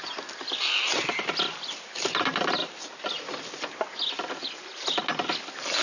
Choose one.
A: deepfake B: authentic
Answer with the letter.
B